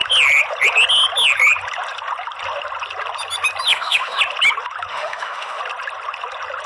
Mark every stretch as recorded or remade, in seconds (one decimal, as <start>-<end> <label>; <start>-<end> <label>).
0.0-3.7 recorded; 3.7-4.2 remade; 4.2-4.9 recorded; 4.9-5.6 remade; 5.6-6.7 recorded